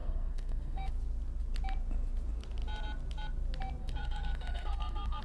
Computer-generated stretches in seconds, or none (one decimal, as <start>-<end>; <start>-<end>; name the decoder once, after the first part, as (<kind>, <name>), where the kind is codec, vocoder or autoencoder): 0.0-0.9 (codec, SNAC); 3.8-5.2